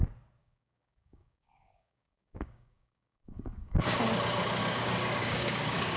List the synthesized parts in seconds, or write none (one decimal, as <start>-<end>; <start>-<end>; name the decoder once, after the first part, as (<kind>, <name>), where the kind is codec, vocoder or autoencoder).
0.4-4.0 (codec, DAC); 4.6-6.0